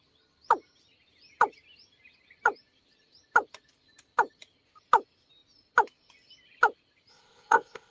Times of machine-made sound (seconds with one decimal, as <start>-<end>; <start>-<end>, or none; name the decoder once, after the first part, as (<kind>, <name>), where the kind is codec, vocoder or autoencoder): 7.1-7.9 (codec, ZipCodec)